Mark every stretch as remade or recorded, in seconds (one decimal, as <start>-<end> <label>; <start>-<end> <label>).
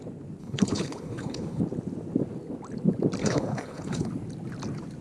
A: 0.0-0.4 recorded; 0.4-1.6 remade; 1.6-3.2 recorded; 3.2-4.1 remade; 4.1-5.0 recorded